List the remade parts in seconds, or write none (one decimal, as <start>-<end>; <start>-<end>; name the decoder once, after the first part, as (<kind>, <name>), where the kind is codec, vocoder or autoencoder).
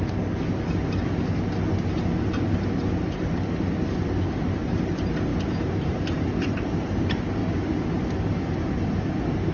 none